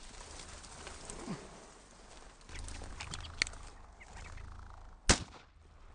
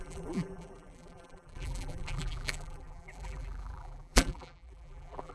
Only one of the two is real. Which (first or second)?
first